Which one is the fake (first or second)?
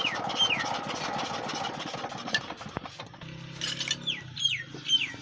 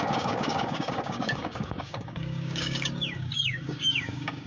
second